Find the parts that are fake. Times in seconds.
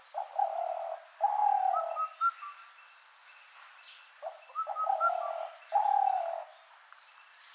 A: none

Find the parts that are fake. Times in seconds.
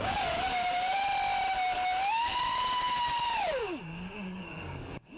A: 0.0-1.0; 2.1-5.2